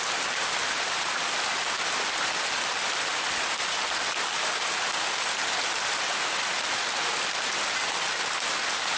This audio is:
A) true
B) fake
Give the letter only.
A